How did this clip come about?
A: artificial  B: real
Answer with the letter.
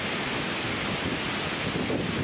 B